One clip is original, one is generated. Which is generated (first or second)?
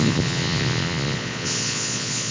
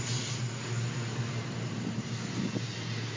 first